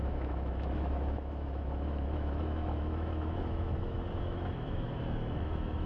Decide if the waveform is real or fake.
fake